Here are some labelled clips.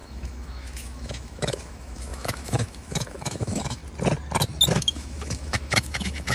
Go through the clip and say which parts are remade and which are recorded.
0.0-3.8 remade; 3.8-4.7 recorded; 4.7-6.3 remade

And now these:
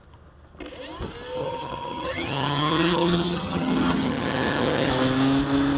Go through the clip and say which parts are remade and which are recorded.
0.0-1.4 recorded; 1.4-4.9 remade; 4.9-5.8 recorded